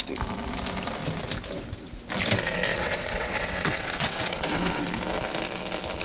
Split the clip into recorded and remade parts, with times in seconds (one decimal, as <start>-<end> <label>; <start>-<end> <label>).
0.0-2.7 recorded; 2.7-4.8 remade; 4.8-6.0 recorded